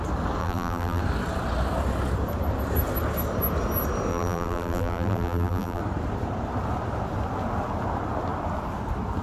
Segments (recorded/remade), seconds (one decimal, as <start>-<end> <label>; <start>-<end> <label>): 0.0-0.4 recorded; 0.4-1.0 remade; 1.0-4.1 recorded; 4.1-5.8 remade; 5.8-9.2 recorded